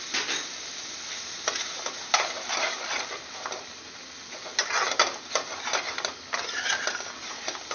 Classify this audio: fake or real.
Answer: real